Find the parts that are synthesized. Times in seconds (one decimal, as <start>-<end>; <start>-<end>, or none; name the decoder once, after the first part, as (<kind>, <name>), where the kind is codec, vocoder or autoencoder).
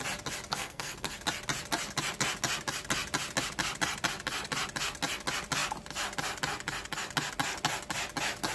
0.5-1.2 (codec, SNAC)